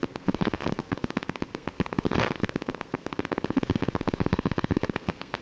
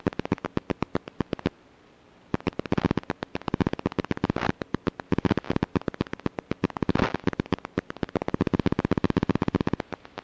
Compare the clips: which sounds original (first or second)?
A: second